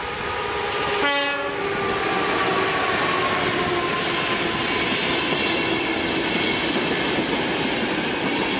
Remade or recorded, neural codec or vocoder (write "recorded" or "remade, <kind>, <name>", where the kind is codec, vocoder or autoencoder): recorded